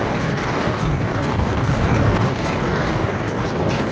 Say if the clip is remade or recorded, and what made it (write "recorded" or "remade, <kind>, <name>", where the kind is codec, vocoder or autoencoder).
remade, codec, DAC